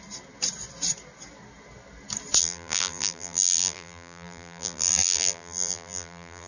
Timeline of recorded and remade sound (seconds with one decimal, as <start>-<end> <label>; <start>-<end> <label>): 0.0-2.4 recorded; 2.4-6.5 remade